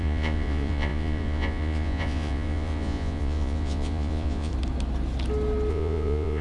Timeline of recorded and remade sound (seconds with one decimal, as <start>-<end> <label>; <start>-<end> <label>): 0.0-4.5 remade; 4.5-5.7 recorded; 5.7-6.4 remade